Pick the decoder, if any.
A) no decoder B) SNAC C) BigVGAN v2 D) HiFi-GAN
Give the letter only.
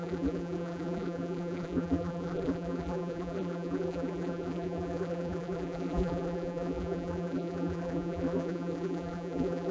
C